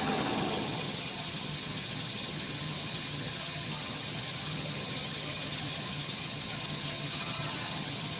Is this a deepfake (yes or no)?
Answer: yes